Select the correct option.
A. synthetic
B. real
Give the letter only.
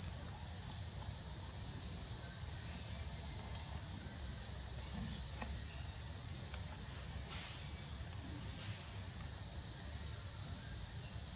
B